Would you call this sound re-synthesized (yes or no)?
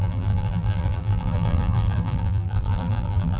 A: yes